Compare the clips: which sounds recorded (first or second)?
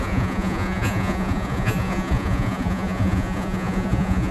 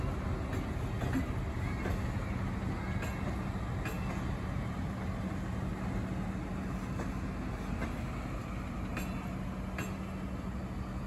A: second